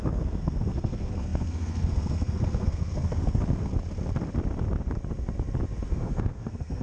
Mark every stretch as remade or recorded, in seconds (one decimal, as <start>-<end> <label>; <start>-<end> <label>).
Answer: 0.0-3.7 remade; 3.7-5.9 recorded; 5.9-6.8 remade